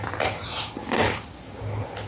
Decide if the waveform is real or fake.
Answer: real